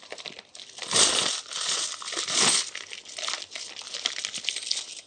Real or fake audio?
real